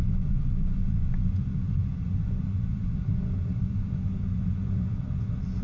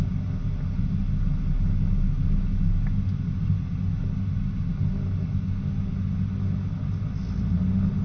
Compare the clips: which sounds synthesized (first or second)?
first